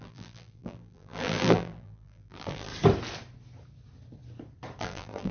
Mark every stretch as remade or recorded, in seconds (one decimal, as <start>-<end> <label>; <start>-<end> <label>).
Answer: 0.0-2.7 remade; 2.7-4.8 recorded; 4.8-5.3 remade